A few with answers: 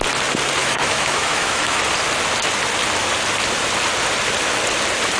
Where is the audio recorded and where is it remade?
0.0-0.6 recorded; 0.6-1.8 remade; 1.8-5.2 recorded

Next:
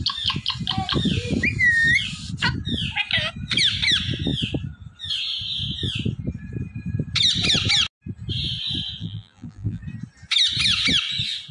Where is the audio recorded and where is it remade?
0.0-9.0 recorded; 9.0-9.8 remade; 9.8-11.5 recorded

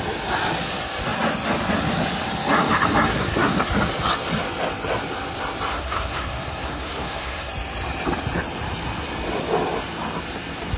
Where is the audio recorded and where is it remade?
0.0-3.1 recorded; 3.1-3.7 remade; 3.7-5.7 recorded; 5.7-7.5 remade; 7.5-10.8 recorded

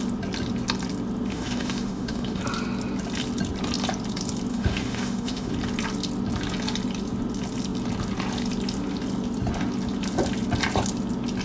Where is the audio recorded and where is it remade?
0.0-1.3 recorded; 1.3-2.4 remade; 2.4-4.5 recorded; 4.5-5.5 remade; 5.5-11.4 recorded

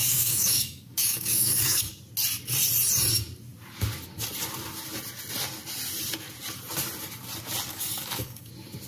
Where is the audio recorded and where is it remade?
0.0-1.9 remade; 1.9-7.7 recorded; 7.7-8.5 remade; 8.5-8.9 recorded